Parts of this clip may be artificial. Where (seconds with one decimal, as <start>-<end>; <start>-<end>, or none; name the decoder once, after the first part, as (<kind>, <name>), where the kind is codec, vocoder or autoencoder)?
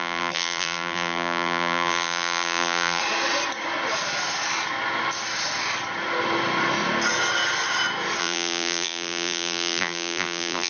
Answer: 0.0-3.0 (vocoder, BigVGAN v2); 8.2-10.7